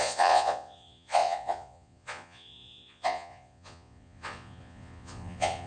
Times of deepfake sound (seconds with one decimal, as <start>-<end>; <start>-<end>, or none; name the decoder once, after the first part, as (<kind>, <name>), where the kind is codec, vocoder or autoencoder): 0.0-5.7 (vocoder, Vocos)